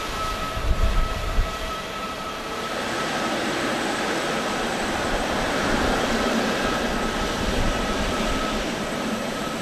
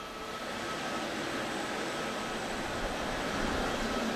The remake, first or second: first